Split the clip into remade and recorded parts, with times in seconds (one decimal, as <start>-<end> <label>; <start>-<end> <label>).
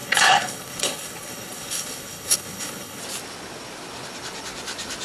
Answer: 0.0-3.0 remade; 3.0-5.0 recorded